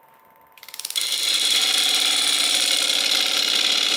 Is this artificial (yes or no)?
yes